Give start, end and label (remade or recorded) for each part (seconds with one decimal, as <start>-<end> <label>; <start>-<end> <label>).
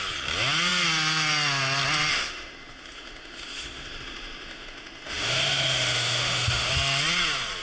0.0-2.1 recorded; 2.1-6.7 remade; 6.7-7.6 recorded